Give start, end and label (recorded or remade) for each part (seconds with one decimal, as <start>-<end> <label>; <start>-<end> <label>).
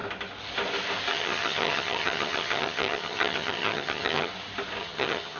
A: 0.0-1.1 recorded; 1.1-4.3 remade; 4.3-4.8 recorded; 4.8-5.4 remade